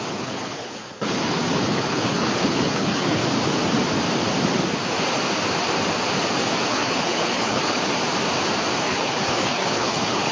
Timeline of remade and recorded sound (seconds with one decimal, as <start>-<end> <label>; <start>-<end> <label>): 0.0-3.2 remade; 3.2-6.7 recorded; 6.7-7.9 remade; 7.9-8.8 recorded; 8.8-10.3 remade